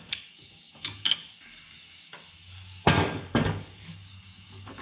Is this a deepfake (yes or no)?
yes